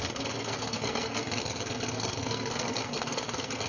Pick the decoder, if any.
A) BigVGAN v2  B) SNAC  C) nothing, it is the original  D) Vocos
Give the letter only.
B